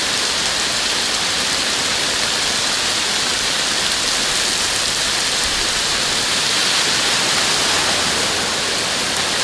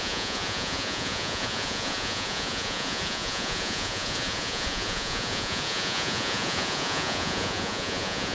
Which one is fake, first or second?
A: second